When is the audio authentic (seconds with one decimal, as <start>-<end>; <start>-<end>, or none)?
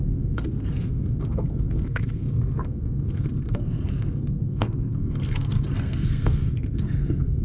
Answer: none